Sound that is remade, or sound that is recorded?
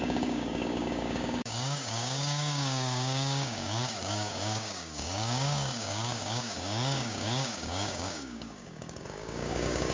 remade